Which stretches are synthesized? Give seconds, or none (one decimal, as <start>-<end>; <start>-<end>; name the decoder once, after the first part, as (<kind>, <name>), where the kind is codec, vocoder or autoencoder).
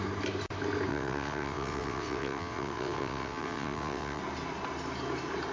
0.9-4.2 (vocoder, WaveNeXt)